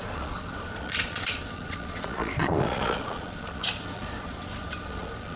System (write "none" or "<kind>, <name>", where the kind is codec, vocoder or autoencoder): vocoder, Vocos